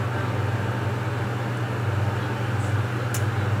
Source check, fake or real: real